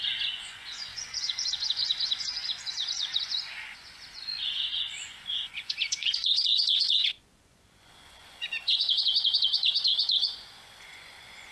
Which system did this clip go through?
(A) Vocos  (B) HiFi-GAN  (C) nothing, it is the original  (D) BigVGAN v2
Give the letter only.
A